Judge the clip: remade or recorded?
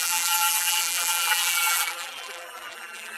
remade